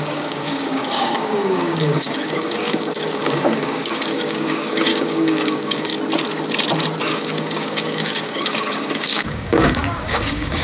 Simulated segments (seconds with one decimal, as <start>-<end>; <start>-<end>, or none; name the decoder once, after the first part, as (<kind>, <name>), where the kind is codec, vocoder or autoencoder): 0.0-5.9 (codec, DAC); 7.0-10.6